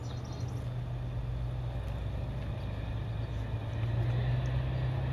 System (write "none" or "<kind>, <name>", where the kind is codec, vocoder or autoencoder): none